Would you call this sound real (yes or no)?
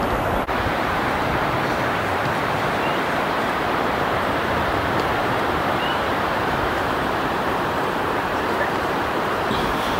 no